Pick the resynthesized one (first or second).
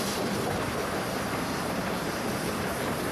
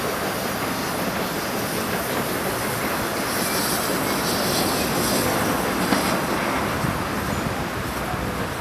first